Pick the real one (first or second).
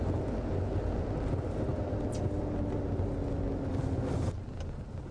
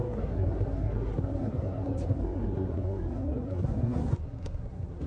first